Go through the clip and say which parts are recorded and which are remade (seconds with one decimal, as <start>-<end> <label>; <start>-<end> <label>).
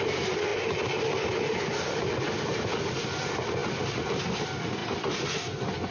0.0-5.9 recorded